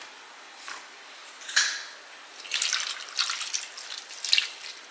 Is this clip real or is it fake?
real